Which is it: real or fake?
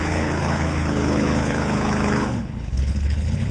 fake